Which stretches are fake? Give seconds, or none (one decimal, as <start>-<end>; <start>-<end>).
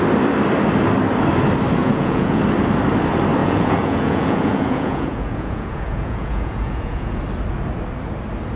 1.8-2.4; 3.4-7.2